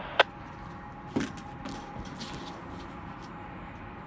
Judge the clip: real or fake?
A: real